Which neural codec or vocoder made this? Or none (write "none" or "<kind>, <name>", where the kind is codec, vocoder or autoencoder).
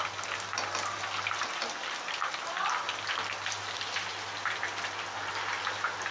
none